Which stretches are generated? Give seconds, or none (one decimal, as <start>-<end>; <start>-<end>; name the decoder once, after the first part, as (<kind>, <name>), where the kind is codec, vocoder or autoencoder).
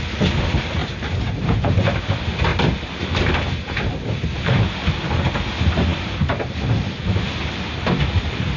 0.8-2.0 (vocoder, BigVGAN v2)